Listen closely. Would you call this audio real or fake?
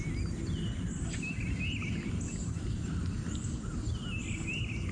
real